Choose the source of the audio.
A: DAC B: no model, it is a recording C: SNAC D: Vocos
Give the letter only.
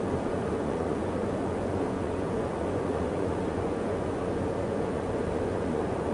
D